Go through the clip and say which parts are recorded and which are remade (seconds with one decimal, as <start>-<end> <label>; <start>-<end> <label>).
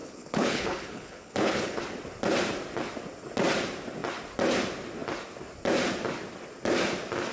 0.0-1.8 remade; 1.8-7.3 recorded